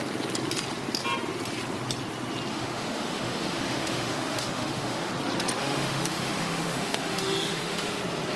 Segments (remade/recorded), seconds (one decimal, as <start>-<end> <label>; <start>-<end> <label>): 0.0-2.5 recorded; 2.5-5.1 remade; 5.1-5.6 recorded; 5.6-8.0 remade; 8.0-8.4 recorded